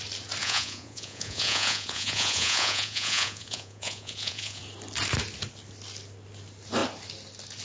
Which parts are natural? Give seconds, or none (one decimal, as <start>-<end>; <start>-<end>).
0.0-0.4; 4.6-7.6

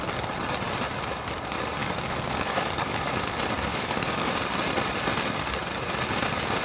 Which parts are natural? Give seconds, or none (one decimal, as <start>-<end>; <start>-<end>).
0.0-1.8; 3.1-3.7; 4.3-6.6

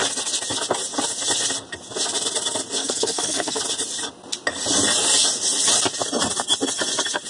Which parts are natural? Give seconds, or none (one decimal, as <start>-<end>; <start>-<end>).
0.0-2.8; 3.6-7.3

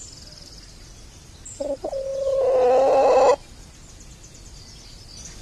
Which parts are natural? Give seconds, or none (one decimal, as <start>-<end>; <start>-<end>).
0.0-5.4

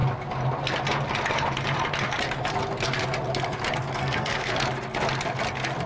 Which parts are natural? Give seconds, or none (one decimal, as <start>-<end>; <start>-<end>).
0.0-4.0; 4.5-5.9

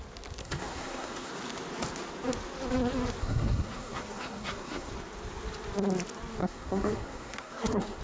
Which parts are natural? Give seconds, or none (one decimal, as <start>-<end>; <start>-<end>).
0.0-0.4; 1.3-3.2; 4.9-6.4